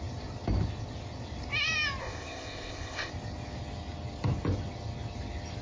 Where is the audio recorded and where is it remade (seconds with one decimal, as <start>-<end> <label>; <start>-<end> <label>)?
0.0-2.0 recorded; 2.0-3.1 remade; 3.1-5.6 recorded